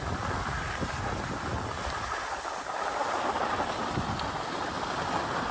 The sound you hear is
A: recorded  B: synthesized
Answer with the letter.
A